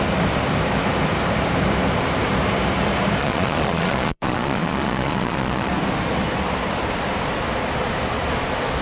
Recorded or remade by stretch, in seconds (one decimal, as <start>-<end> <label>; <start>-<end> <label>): 0.0-3.2 recorded; 3.2-5.7 remade; 5.7-8.8 recorded